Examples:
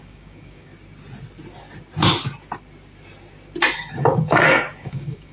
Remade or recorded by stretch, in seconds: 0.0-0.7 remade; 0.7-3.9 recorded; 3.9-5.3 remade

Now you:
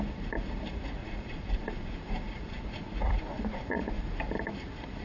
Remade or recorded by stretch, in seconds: 0.0-1.0 recorded; 1.0-4.0 remade; 4.0-5.0 recorded